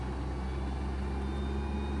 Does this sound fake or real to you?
real